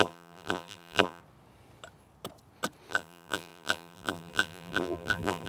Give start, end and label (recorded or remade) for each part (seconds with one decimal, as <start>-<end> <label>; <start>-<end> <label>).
0.0-1.2 remade; 1.2-2.9 recorded; 2.9-5.5 remade